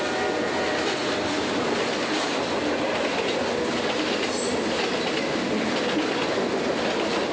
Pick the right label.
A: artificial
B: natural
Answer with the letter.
B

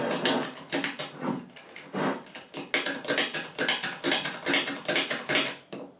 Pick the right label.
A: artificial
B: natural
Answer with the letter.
B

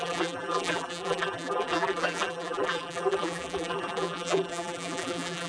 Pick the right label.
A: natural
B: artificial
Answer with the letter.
B